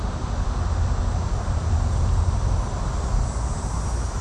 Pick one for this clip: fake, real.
real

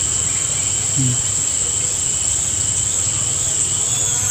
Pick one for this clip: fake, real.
real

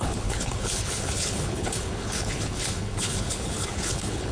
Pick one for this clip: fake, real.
fake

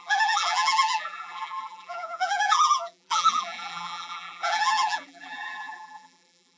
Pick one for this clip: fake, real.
fake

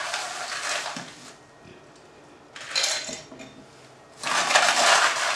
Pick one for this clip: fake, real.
real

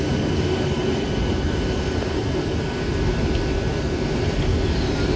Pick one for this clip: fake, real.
real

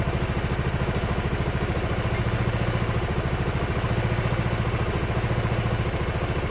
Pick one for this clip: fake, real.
real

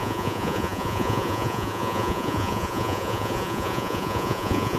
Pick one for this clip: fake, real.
fake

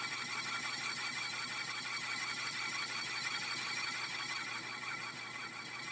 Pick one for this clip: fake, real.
real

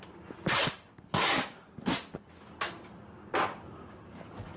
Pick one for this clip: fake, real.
real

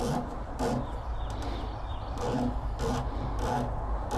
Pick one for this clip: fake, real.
real